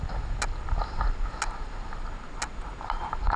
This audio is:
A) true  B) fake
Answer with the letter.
A